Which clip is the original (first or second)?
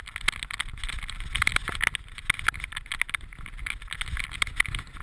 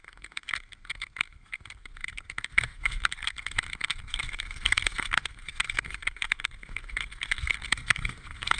first